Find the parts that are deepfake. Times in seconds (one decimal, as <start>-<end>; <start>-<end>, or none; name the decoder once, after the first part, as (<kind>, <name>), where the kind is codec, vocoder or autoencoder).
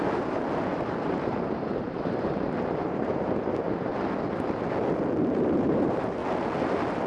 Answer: 0.0-3.9 (vocoder, BigVGAN v2); 5.2-6.2